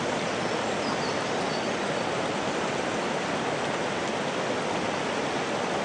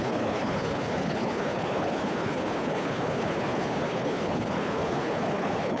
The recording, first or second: first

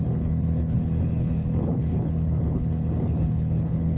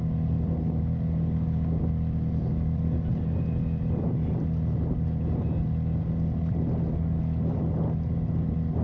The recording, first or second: second